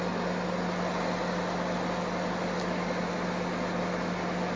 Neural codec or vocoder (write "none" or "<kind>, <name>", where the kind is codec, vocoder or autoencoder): none